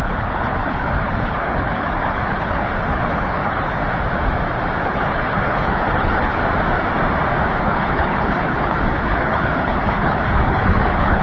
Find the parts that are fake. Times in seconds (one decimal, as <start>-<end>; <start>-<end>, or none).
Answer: 0.0-3.8; 4.8-6.4; 7.6-11.2